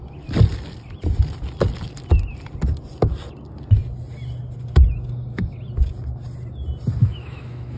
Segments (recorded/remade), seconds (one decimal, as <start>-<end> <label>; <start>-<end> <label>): 0.0-7.0 recorded; 7.0-7.8 remade